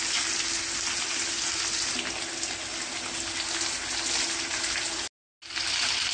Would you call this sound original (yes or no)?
yes